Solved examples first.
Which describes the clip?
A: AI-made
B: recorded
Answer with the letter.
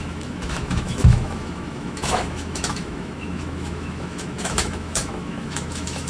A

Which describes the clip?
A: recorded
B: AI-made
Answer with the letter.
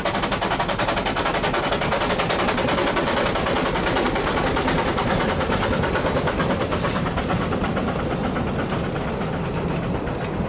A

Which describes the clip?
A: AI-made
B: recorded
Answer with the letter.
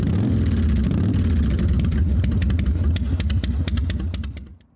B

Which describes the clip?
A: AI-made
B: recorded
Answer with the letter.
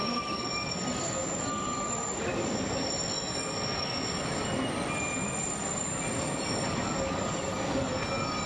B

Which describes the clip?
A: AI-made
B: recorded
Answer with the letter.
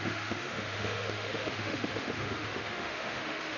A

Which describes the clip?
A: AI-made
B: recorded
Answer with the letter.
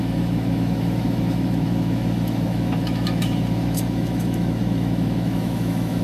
A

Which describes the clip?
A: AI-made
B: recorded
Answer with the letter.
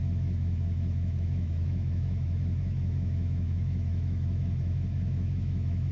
A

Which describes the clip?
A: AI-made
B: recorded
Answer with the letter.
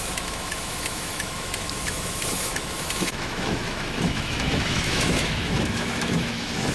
A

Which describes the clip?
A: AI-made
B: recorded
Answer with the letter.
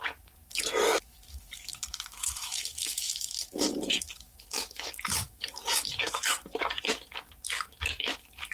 A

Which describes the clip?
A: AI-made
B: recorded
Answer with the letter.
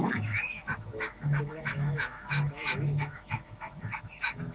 A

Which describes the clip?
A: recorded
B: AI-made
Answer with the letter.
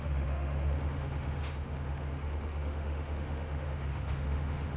B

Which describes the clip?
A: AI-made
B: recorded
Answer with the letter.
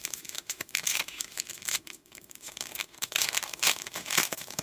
A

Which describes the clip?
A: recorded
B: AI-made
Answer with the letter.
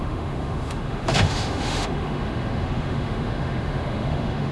B